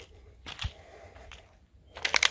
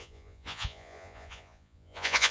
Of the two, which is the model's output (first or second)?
second